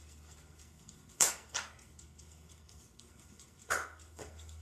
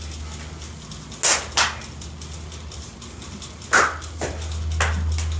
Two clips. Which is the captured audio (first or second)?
second